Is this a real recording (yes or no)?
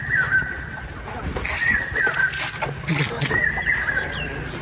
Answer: yes